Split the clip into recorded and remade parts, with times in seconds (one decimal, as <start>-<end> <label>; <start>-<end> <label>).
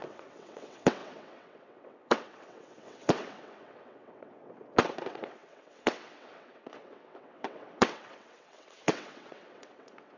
0.0-10.2 remade